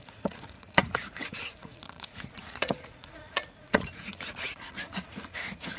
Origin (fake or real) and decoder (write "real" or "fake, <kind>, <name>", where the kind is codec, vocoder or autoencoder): fake, vocoder, Vocos